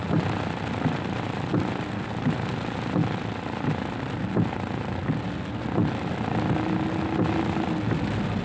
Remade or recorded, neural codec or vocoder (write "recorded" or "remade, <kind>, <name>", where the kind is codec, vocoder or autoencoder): recorded